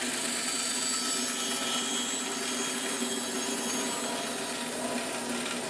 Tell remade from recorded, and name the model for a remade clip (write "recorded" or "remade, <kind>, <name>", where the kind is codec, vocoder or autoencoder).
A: recorded